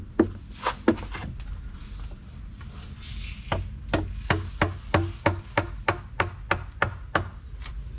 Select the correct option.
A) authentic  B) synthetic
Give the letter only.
A